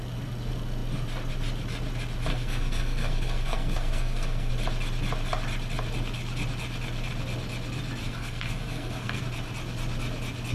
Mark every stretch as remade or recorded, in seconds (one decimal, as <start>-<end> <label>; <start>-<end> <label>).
0.0-2.3 recorded; 2.3-4.5 remade; 4.5-8.0 recorded; 8.0-9.2 remade; 9.2-10.5 recorded